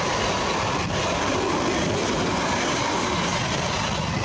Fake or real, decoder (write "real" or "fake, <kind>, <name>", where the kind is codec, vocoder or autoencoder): real